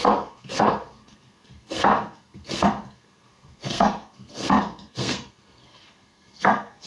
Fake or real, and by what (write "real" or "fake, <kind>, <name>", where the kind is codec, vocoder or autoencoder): fake, codec, SNAC